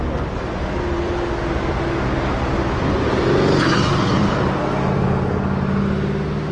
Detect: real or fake real